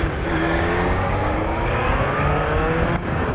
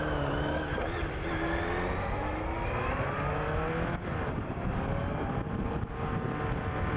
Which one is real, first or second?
second